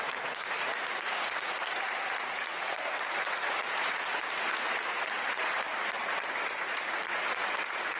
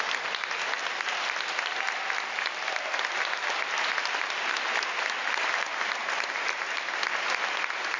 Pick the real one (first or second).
second